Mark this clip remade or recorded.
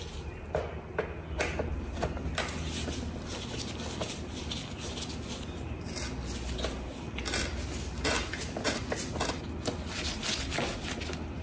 recorded